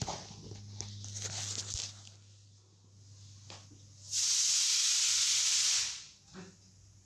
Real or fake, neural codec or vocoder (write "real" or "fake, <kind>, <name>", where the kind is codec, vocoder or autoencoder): real